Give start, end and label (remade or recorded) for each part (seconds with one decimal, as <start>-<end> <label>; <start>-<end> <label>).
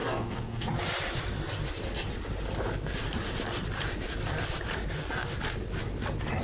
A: 0.0-0.7 remade; 0.7-6.4 recorded